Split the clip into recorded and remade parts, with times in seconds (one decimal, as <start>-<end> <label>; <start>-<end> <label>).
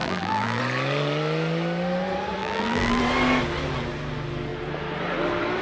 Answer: 0.0-0.6 remade; 0.6-2.4 recorded; 2.4-3.0 remade; 3.0-5.6 recorded